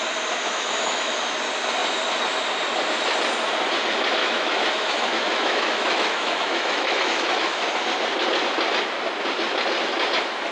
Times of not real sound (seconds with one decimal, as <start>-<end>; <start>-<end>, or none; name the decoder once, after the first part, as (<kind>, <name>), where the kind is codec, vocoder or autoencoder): 0.4-1.2 (autoencoder, DAC-VAE); 4.2-7.6